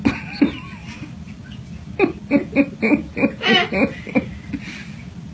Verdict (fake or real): real